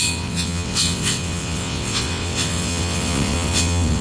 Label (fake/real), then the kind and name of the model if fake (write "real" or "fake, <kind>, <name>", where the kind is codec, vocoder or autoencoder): fake, vocoder, WaveNeXt